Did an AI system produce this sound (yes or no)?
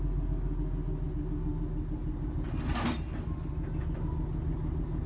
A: no